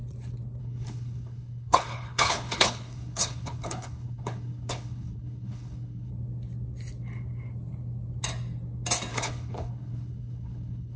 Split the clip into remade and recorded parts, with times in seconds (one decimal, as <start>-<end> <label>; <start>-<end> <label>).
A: 0.0-0.6 recorded; 0.6-6.1 remade; 6.1-9.1 recorded; 9.1-11.0 remade